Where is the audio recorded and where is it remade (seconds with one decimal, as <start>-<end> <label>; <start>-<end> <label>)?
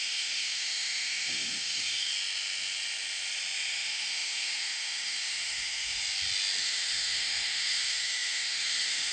0.0-2.1 remade; 2.1-3.7 recorded; 3.7-6.0 remade; 6.0-6.6 recorded; 6.6-9.1 remade